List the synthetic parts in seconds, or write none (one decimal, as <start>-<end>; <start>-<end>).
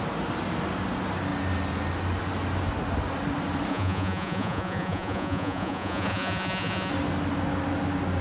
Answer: 3.7-6.9